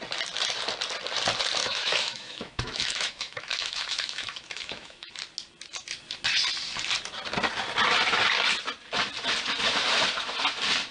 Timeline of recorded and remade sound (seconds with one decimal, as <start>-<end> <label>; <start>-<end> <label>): 0.0-1.6 recorded; 1.6-5.1 remade; 5.1-10.9 recorded